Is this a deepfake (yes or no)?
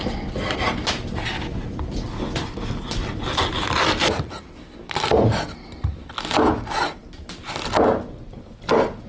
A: no